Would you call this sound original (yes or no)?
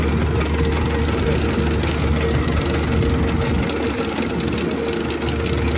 yes